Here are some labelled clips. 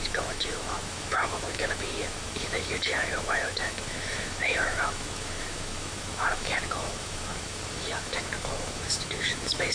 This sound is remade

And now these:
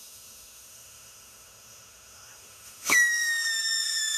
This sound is remade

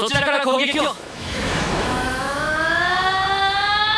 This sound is remade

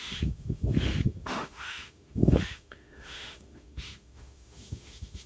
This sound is remade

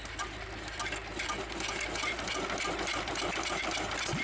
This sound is recorded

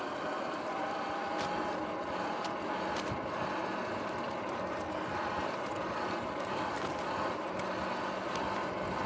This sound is recorded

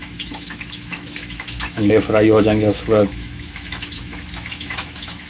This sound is remade